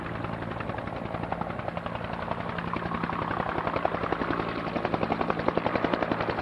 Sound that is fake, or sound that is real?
real